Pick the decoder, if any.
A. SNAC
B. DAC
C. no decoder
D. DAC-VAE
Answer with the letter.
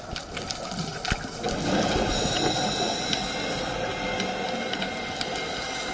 C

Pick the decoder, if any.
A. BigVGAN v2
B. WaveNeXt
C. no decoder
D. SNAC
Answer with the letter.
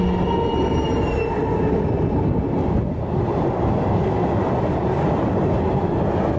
C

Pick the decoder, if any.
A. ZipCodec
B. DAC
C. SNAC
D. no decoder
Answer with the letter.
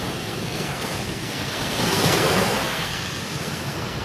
C